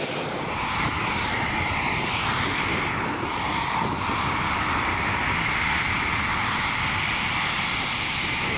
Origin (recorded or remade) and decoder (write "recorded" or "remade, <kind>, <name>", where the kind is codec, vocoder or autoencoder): recorded